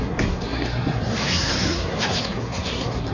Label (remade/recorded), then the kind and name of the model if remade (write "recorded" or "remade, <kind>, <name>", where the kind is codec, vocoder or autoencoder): remade, codec, SNAC